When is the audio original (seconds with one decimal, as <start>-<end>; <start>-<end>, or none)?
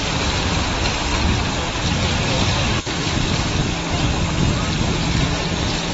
0.0-5.9